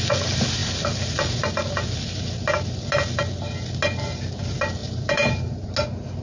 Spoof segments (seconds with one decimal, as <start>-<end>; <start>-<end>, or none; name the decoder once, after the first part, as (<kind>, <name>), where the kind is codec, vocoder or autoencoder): 4.8-5.7 (vocoder, BigVGAN v2)